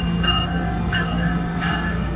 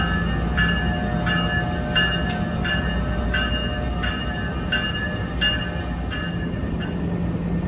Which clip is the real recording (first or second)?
second